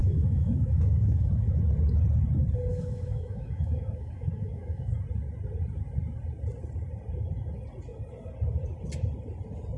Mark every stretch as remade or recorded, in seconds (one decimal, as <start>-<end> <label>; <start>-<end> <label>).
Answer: 0.0-1.6 remade; 1.6-2.7 recorded; 2.7-5.0 remade; 5.0-9.8 recorded